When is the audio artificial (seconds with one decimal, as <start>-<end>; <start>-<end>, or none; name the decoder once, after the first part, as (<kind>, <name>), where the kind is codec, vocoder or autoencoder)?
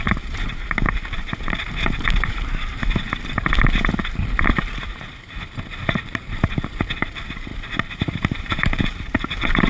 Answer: 0.0-2.7 (vocoder, BigVGAN v2); 5.9-7.5; 8.0-9.7